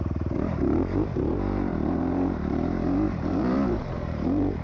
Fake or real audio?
fake